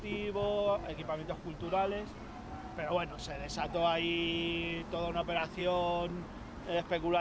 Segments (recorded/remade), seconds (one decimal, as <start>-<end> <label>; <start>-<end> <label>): 0.0-7.2 recorded